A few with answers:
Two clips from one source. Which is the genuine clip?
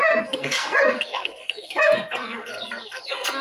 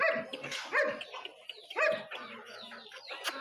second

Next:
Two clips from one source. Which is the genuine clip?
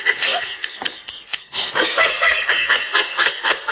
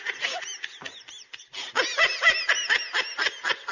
second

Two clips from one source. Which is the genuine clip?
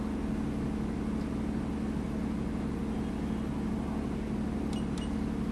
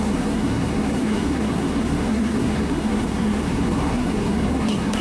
first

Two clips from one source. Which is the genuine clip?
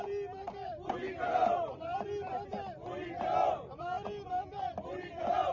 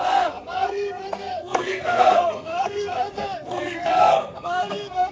first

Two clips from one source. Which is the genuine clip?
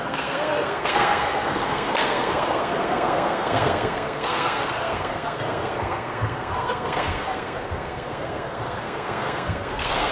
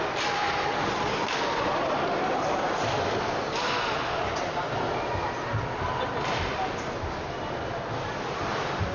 second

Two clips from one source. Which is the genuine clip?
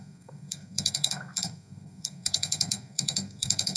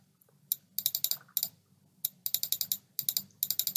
second